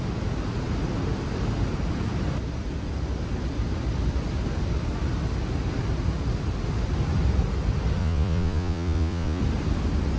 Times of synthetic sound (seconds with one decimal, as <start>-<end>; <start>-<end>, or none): 8.0-9.4